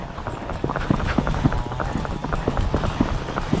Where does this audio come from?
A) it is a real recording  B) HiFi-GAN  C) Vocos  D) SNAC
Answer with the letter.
A